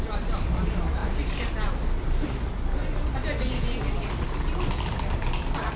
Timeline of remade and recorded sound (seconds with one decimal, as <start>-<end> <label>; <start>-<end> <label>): 0.0-5.8 recorded